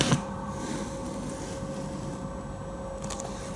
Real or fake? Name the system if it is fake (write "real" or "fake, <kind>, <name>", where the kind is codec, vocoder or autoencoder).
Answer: real